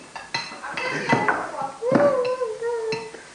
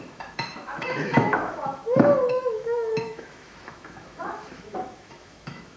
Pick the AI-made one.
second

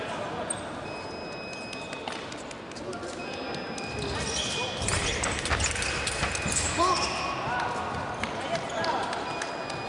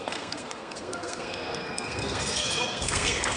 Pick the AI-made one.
second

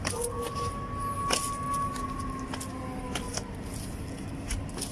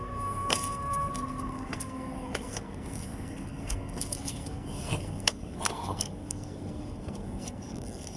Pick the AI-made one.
second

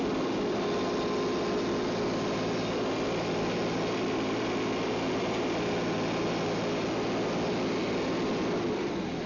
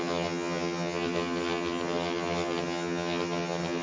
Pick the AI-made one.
second